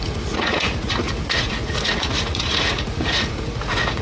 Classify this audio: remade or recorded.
remade